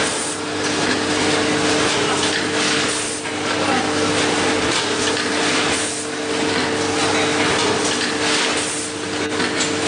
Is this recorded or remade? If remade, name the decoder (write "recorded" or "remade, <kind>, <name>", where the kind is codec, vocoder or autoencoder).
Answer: recorded